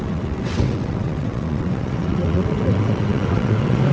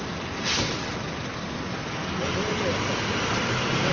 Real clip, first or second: second